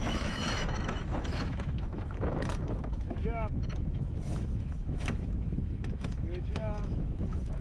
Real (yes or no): no